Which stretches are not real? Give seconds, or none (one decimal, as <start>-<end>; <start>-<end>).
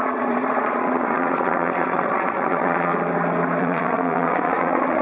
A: 0.0-2.9; 3.6-5.0